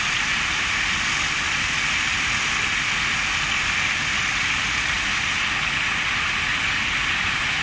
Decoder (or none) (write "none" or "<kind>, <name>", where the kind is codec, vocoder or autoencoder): none